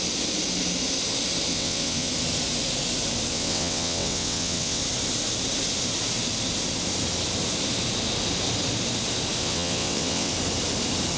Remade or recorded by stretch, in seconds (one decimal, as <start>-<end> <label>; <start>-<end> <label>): 0.0-1.5 recorded; 1.5-2.1 remade; 2.1-3.3 recorded; 3.3-4.8 remade; 4.8-9.4 recorded; 9.4-10.3 remade; 10.3-11.2 recorded